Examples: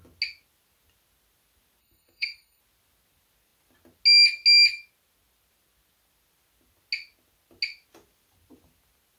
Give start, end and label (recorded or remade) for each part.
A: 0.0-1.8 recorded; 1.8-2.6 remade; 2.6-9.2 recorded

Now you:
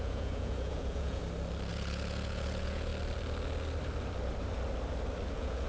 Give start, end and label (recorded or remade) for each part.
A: 0.0-1.2 remade; 1.2-1.7 recorded; 1.7-2.9 remade; 2.9-5.3 recorded; 5.3-5.7 remade

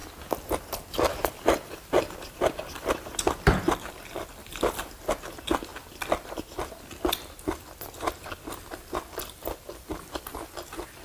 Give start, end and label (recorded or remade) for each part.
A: 0.0-3.9 remade; 3.9-4.4 recorded; 4.4-5.1 remade; 5.1-11.0 recorded

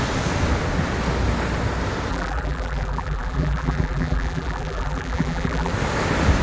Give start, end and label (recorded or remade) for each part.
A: 0.0-2.1 recorded; 2.1-5.7 remade; 5.7-6.4 recorded

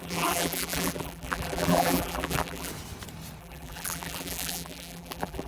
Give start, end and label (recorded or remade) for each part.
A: 0.0-2.7 remade; 2.7-3.4 recorded; 3.4-5.5 remade